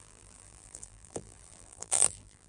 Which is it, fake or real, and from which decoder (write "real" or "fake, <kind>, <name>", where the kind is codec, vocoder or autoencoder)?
fake, vocoder, BigVGAN v2